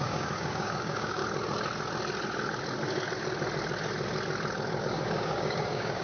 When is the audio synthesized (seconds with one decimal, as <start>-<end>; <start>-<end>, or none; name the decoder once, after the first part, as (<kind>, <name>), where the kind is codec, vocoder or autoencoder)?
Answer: 0.0-1.2 (codec, DAC); 4.8-6.0